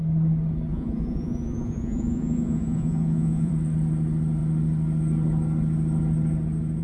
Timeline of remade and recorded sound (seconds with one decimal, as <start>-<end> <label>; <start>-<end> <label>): 0.0-0.7 recorded; 0.7-3.5 remade; 3.5-6.8 recorded